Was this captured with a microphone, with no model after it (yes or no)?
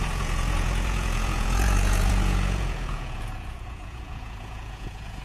no